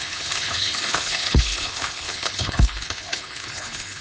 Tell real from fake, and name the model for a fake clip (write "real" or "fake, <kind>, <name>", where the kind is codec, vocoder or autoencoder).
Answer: fake, codec, HILCodec